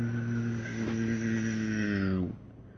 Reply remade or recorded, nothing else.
recorded